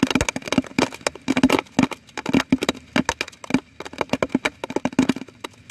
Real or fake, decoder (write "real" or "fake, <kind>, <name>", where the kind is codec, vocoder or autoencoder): real